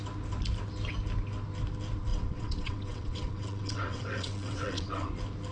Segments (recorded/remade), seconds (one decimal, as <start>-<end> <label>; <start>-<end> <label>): 0.0-2.1 recorded; 2.1-5.1 remade; 5.1-5.5 recorded